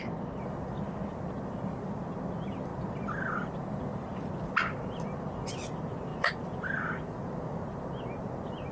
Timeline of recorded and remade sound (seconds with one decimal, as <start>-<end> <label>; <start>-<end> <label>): 0.0-1.0 recorded; 1.0-1.8 remade; 1.8-2.7 recorded; 2.7-4.3 remade; 4.3-6.1 recorded; 6.1-6.7 remade; 6.7-8.7 recorded